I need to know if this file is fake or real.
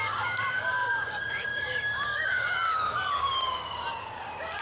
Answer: fake